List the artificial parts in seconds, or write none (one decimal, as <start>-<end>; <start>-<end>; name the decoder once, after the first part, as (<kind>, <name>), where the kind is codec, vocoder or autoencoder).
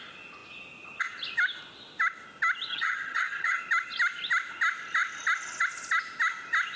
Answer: 2.7-3.6 (vocoder, HiFi-GAN)